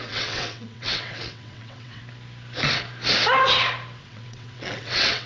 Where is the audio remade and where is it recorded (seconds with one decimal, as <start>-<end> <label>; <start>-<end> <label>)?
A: 0.0-2.0 remade; 2.0-4.0 recorded; 4.0-5.3 remade